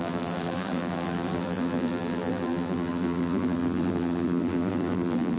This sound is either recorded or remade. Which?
remade